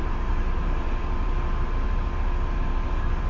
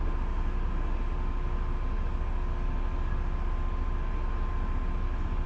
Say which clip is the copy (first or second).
first